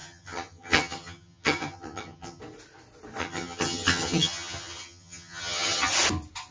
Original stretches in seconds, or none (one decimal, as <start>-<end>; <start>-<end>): 2.4-3.2; 5.9-6.5